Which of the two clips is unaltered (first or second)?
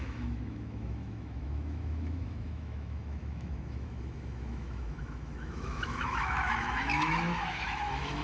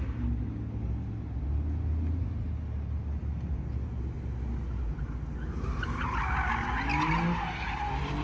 second